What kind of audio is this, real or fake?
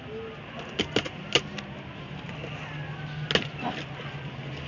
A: real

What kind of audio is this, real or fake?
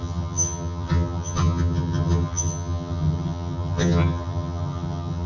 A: fake